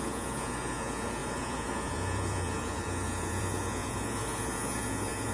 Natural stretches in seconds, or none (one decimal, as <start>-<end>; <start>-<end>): none